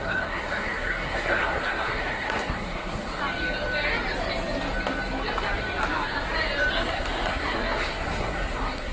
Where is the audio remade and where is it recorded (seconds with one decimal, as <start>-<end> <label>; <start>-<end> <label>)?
0.0-3.2 remade; 3.2-6.7 recorded; 6.7-8.9 remade